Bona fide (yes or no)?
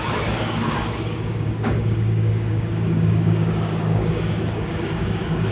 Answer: no